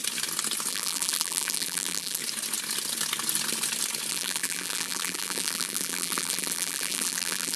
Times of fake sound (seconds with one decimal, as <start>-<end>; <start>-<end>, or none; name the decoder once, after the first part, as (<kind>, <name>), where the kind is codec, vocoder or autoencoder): 0.7-2.2 (vocoder, BigVGAN v2); 4.1-7.6